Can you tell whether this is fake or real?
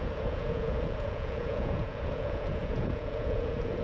fake